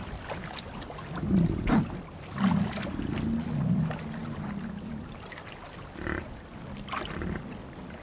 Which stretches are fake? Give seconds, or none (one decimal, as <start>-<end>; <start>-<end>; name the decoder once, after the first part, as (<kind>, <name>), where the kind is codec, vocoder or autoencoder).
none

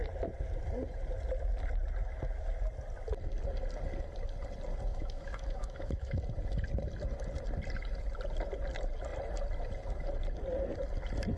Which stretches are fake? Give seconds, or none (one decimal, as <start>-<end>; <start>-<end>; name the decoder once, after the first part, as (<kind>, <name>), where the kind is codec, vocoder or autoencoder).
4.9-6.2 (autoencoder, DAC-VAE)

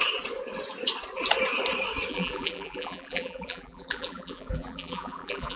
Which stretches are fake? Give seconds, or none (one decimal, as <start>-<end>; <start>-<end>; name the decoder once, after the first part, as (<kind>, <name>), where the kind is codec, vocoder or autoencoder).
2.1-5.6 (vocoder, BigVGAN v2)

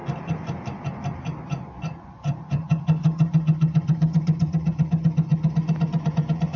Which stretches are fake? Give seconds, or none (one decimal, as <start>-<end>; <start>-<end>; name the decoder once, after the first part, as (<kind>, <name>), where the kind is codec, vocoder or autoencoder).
2.0-5.3 (vocoder, Vocos); 6.1-6.6

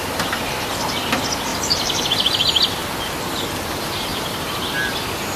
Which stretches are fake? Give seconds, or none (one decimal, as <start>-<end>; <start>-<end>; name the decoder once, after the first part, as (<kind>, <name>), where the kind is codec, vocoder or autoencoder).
1.5-2.0 (vocoder, BigVGAN v2); 4.1-4.6

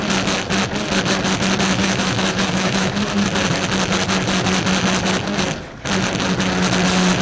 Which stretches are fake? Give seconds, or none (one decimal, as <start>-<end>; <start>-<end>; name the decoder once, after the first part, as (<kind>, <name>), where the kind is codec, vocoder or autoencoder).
1.8-2.9 (autoencoder, DAC-VAE)

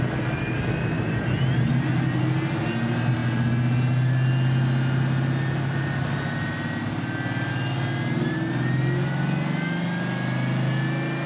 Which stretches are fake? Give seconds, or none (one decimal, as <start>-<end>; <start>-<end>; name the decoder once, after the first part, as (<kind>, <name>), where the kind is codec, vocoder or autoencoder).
none